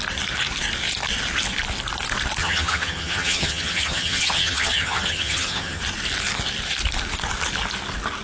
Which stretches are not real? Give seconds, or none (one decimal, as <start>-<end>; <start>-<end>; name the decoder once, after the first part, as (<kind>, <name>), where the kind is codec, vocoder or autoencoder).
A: 2.4-5.8 (vocoder, HiFi-GAN)